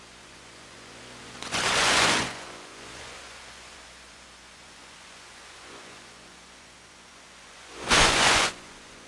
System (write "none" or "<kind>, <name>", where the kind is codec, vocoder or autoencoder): vocoder, Vocos